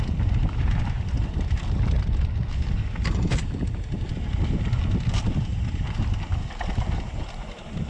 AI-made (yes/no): no